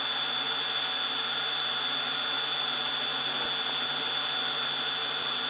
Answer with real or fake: real